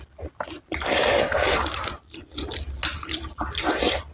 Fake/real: real